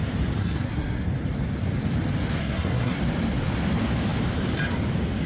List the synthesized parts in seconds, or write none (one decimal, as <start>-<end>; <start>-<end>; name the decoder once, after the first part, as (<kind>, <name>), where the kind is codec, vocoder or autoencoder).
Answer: 0.4-1.1 (codec, SNAC); 2.4-3.0